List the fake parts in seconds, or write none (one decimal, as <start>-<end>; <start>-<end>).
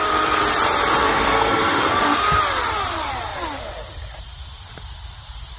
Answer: 1.0-2.4